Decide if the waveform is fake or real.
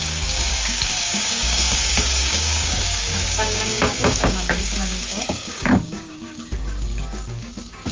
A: fake